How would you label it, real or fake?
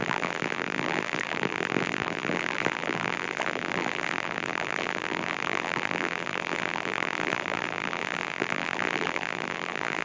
fake